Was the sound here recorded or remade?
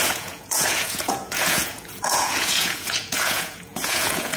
remade